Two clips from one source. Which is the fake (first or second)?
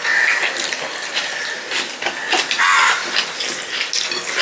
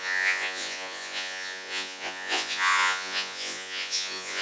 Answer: second